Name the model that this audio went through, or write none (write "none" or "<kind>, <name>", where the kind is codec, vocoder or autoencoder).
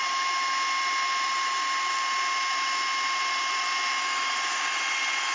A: none